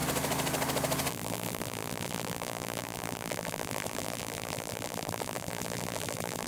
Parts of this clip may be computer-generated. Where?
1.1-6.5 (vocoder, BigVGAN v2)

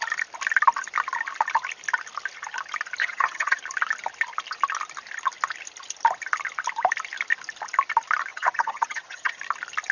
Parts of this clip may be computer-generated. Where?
3.0-3.6 (vocoder, HiFi-GAN); 8.3-9.4

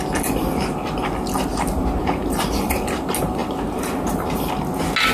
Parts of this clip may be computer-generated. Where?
1.5-2.7 (vocoder, BigVGAN v2); 3.4-4.5

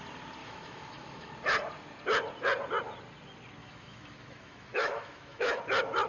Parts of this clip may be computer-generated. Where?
0.4-1.3 (autoencoder, DAC-VAE); 3.6-5.6

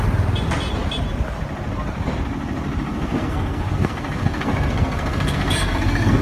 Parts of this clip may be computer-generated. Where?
2.9-6.2 (codec, SNAC)